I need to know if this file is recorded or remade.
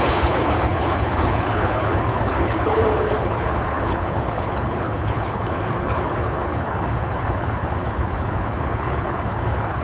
remade